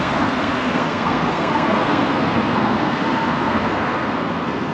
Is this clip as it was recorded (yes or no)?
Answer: no